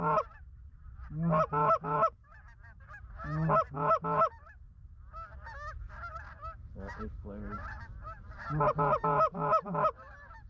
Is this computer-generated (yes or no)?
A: no